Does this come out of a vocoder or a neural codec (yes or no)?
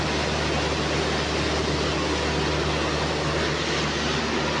no